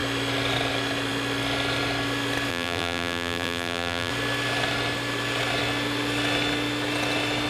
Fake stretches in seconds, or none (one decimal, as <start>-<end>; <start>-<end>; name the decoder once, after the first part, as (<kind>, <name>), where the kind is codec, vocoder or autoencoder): 2.5-4.1 (vocoder, BigVGAN v2)